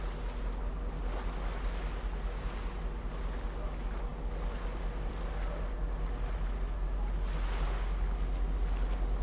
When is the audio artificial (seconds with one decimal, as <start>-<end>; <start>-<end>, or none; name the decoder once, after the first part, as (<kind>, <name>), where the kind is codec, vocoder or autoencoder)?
none